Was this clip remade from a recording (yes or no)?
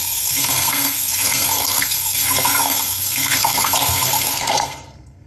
yes